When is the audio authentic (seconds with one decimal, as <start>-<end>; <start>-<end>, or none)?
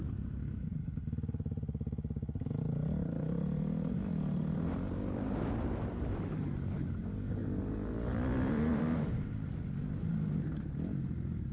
0.0-11.5